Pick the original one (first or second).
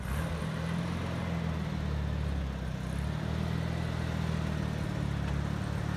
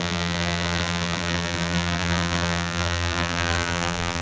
first